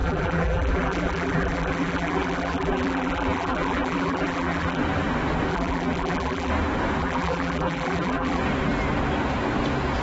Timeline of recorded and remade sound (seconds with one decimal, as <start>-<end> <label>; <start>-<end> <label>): 0.0-4.8 remade; 4.8-5.5 recorded; 5.5-6.5 remade; 6.5-7.0 recorded; 7.0-8.4 remade; 8.4-10.0 recorded